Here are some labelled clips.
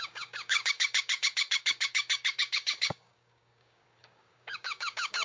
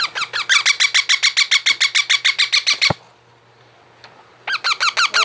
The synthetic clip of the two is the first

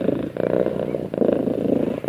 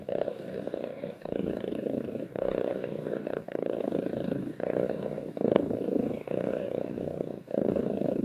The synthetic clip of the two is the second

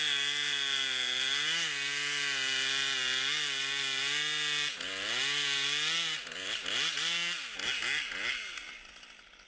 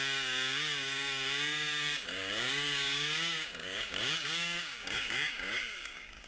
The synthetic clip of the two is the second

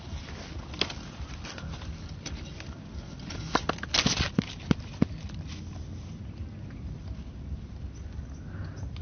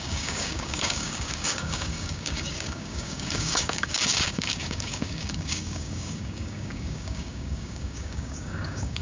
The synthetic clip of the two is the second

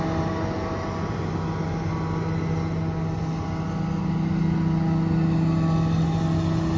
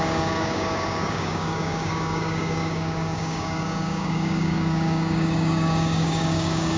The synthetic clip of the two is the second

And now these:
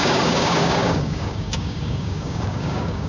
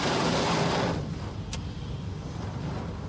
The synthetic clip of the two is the first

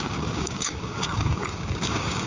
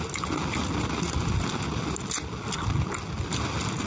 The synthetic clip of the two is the first